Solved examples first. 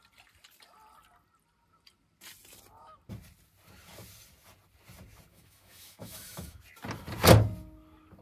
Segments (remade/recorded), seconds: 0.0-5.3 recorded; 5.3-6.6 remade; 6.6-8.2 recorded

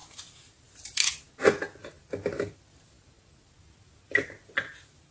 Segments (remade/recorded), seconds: 0.0-5.1 recorded

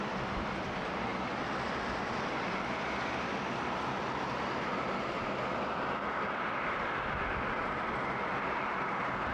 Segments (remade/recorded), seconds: 0.0-9.3 remade

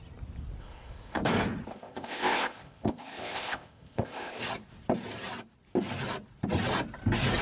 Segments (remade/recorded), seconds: 0.0-0.6 recorded; 0.6-1.2 remade; 1.2-1.7 recorded; 1.7-4.4 remade; 4.4-7.4 recorded

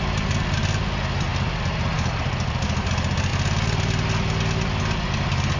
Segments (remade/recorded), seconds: 0.0-5.6 recorded

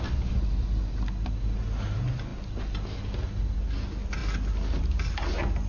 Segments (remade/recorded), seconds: 0.0-5.7 recorded

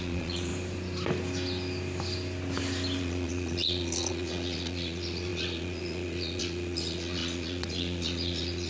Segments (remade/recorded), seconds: 0.0-0.5 remade; 0.5-3.0 recorded; 3.0-8.7 remade

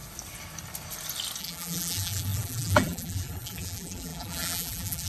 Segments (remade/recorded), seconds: 0.0-1.4 recorded; 1.4-5.1 remade